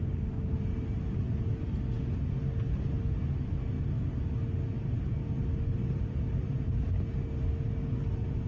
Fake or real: real